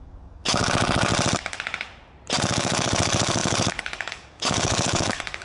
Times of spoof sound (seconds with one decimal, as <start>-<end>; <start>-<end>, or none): 0.0-1.1; 2.4-5.4